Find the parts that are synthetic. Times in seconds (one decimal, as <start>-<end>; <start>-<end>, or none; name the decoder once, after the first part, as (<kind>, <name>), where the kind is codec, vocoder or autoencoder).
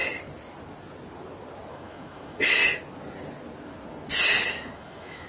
1.7-2.6 (autoencoder, DAC-VAE); 4.5-5.3